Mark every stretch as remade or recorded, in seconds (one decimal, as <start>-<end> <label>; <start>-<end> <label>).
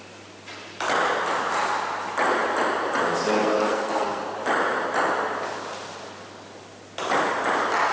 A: 0.0-3.4 recorded; 3.4-4.2 remade; 4.2-7.9 recorded